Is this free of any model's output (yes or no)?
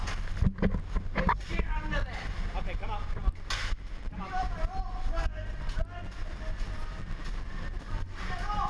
yes